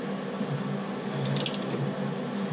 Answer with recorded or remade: recorded